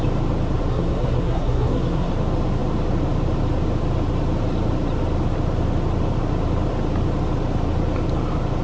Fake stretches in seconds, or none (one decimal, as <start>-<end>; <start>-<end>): 0.7-2.1